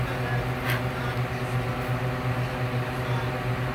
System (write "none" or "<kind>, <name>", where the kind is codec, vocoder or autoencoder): none